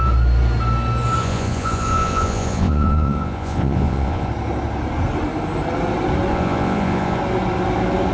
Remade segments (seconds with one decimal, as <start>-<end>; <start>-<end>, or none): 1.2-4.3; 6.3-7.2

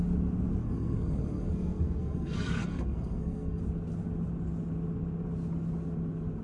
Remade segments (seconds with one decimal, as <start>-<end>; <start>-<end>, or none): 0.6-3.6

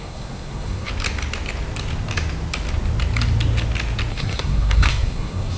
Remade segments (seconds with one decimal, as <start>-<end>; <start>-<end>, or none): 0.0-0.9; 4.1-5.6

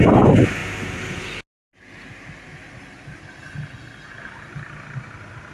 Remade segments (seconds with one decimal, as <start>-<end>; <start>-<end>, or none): none